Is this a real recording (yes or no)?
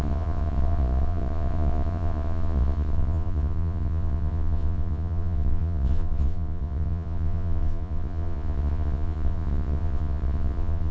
no